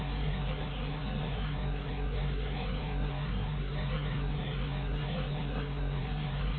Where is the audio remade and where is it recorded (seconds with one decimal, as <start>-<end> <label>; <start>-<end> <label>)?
0.0-6.6 remade